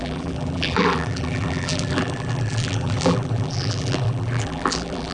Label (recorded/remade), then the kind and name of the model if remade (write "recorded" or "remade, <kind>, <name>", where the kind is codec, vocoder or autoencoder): remade, vocoder, BigVGAN v2